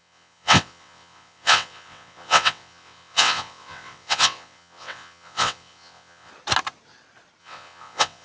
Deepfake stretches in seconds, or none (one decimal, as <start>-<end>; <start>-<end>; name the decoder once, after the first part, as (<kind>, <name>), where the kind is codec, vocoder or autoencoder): 0.0-6.3 (vocoder, WaveNeXt); 7.4-8.2